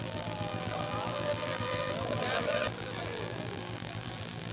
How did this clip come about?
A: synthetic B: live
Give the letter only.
A